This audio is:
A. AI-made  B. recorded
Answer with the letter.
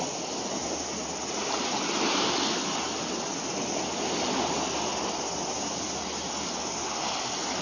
B